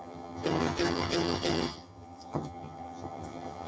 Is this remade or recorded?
remade